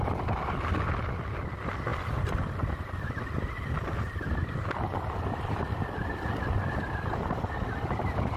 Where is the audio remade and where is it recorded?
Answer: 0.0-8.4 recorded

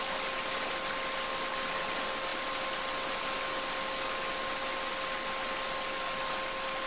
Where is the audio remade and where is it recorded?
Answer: 0.0-6.9 recorded

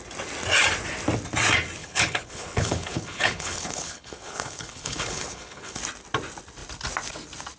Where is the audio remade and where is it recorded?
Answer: 0.0-1.8 recorded; 1.8-5.8 remade; 5.8-7.6 recorded

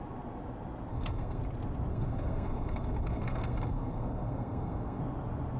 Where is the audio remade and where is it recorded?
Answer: 0.0-0.9 recorded; 0.9-1.4 remade; 1.4-1.9 recorded; 1.9-5.0 remade; 5.0-5.6 recorded